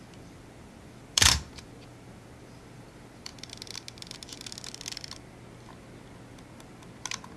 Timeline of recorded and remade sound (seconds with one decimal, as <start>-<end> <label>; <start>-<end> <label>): 0.0-3.3 remade; 3.3-7.4 recorded

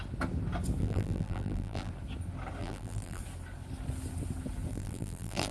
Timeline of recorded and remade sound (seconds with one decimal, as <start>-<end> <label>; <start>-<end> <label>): 0.0-0.8 recorded; 0.8-1.9 remade; 1.9-2.6 recorded; 2.6-3.2 remade; 3.2-4.7 recorded; 4.7-5.5 remade

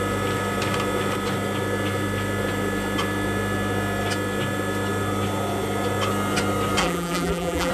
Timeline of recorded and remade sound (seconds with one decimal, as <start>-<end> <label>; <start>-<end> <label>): 0.0-6.8 recorded; 6.8-7.7 remade

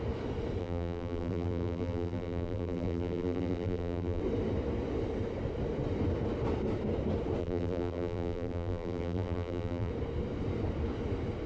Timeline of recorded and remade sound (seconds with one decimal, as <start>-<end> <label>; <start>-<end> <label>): 0.0-0.6 recorded; 0.6-4.2 remade; 4.2-7.4 recorded; 7.4-9.9 remade; 9.9-11.5 recorded

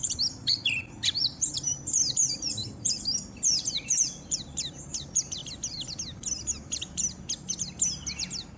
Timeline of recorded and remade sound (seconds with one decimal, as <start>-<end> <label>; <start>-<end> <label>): 0.0-4.4 remade; 4.4-8.6 recorded

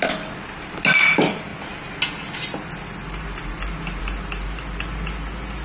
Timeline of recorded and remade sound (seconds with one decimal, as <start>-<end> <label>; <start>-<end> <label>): 0.0-5.6 recorded